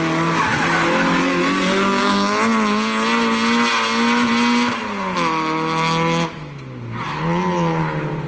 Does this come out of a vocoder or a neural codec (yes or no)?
no